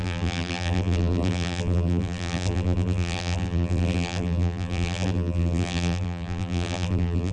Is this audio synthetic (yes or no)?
yes